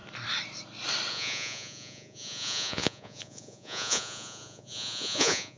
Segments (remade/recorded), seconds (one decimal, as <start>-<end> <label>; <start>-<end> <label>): 0.0-1.1 recorded; 1.1-5.6 remade